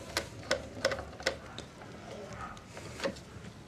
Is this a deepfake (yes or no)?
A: no